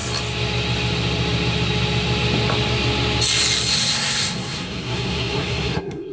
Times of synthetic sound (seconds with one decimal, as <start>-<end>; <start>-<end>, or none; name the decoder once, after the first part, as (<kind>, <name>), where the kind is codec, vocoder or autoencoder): 3.7-6.1 (codec, SNAC)